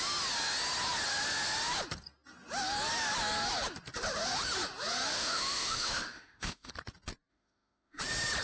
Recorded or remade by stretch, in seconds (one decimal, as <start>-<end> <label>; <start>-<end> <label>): 0.0-5.1 recorded; 5.1-6.7 remade; 6.7-7.3 recorded; 7.3-8.0 remade; 8.0-8.4 recorded